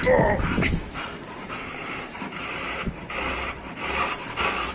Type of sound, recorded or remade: remade